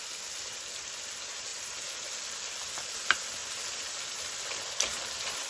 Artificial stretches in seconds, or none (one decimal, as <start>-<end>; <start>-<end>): none